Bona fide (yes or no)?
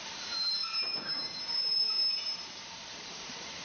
no